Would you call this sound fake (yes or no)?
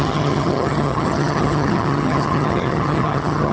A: yes